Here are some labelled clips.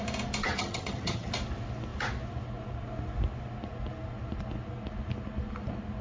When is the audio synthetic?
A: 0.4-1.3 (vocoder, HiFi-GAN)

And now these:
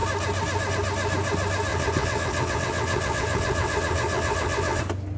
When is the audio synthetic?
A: 1.7-4.8 (vocoder, WaveNeXt)

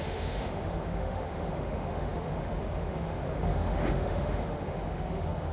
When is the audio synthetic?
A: 0.0-5.5 (autoencoder, DAC-VAE)

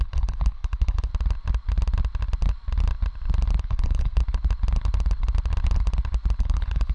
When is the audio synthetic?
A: 0.0-1.1 (codec, HILCodec); 3.6-4.2; 6.4-6.9

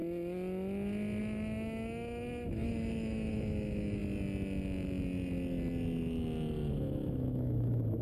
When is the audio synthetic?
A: 1.2-4.0 (autoencoder, DAC-VAE); 6.7-8.0

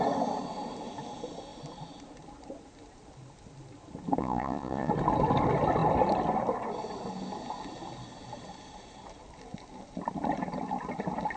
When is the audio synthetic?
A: 4.2-4.9 (vocoder, Vocos)